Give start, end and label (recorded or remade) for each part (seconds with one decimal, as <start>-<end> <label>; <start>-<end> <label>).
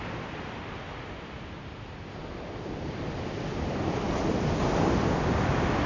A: 0.0-5.9 recorded